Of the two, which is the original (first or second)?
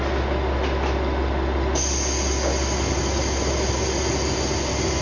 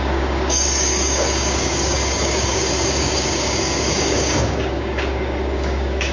first